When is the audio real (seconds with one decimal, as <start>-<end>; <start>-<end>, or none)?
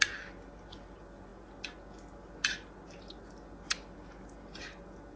0.0-5.2